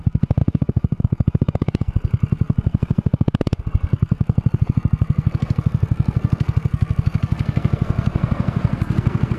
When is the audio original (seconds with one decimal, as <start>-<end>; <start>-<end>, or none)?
none